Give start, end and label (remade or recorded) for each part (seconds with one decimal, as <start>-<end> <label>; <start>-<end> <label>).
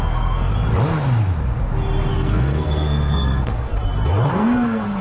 0.0-0.5 remade; 0.5-2.1 recorded; 2.1-3.7 remade; 3.7-4.3 recorded; 4.3-5.0 remade